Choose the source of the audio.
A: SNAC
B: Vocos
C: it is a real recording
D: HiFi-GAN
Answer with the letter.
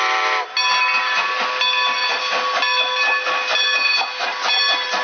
C